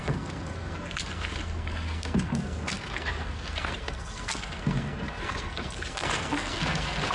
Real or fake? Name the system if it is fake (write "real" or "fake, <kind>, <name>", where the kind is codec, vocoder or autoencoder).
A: fake, codec, SNAC